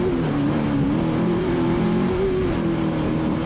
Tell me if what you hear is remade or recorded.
remade